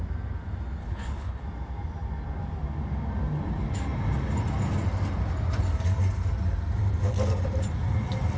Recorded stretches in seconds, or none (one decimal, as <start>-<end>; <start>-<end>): 0.0-0.8; 1.4-8.4